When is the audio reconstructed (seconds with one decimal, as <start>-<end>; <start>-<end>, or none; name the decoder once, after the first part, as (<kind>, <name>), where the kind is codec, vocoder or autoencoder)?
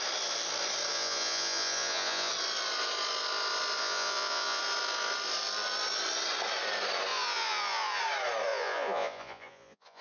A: 0.9-2.3 (vocoder, Vocos); 3.8-4.6; 7.1-8.0; 8.5-10.0